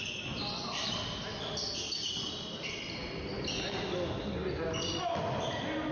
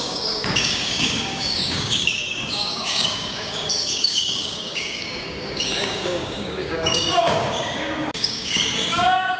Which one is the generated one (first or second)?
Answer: second